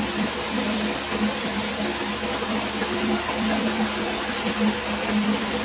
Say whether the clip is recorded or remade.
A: remade